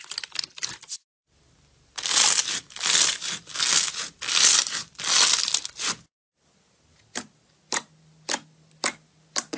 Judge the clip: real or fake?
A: real